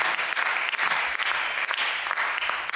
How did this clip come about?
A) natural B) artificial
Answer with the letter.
A